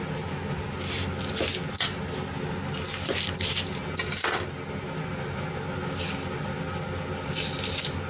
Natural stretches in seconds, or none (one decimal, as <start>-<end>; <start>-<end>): 0.0-8.1